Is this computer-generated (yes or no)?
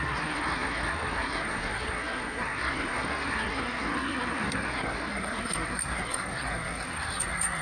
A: yes